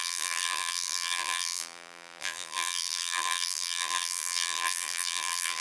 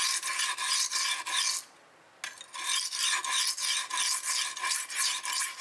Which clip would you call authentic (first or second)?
second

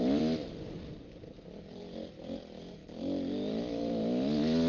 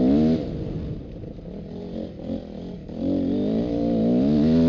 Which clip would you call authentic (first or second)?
second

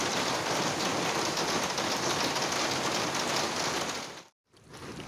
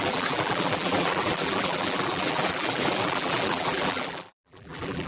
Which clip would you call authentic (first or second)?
first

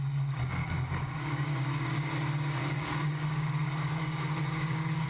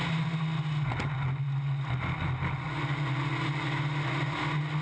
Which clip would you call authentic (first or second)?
second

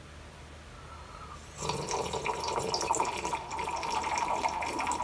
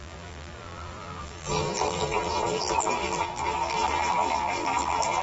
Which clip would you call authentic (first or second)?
first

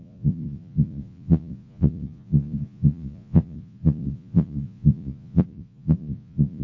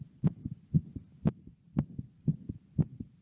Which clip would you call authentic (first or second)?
second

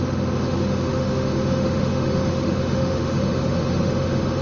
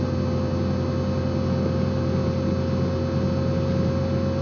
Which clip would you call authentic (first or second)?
second